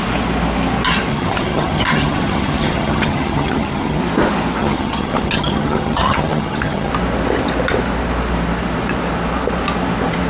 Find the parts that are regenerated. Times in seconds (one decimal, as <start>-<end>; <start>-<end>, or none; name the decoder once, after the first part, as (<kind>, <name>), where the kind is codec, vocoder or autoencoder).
1.1-4.0 (vocoder, HiFi-GAN); 4.6-6.9